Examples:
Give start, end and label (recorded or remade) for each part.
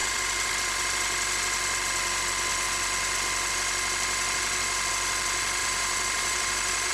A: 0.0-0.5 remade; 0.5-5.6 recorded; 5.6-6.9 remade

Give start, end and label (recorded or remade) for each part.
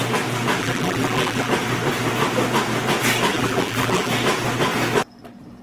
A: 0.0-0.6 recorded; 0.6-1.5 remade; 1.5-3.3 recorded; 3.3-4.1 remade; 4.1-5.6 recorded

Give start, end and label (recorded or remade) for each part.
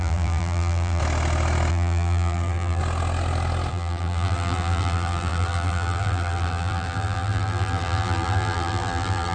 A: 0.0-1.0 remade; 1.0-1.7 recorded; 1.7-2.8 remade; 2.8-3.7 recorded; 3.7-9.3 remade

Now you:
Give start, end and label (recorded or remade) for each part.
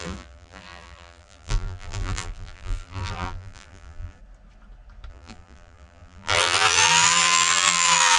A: 0.0-4.2 remade; 4.2-5.1 recorded; 5.1-8.2 remade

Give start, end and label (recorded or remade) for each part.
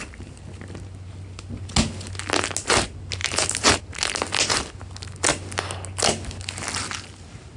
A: 0.0-3.2 recorded; 3.2-3.8 remade; 3.8-7.6 recorded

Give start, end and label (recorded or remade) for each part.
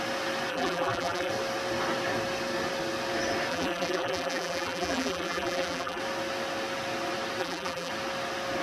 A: 0.0-0.5 recorded; 0.5-1.3 remade; 1.3-3.5 recorded; 3.5-6.0 remade; 6.0-7.4 recorded; 7.4-7.9 remade; 7.9-8.6 recorded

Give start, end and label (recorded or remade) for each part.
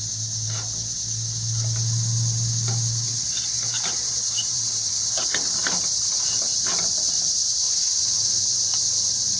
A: 0.0-3.2 recorded; 3.2-7.9 remade; 7.9-9.4 recorded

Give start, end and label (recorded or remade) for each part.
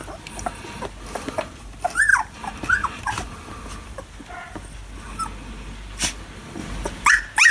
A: 0.0-2.1 recorded; 2.1-3.0 remade; 3.0-7.5 recorded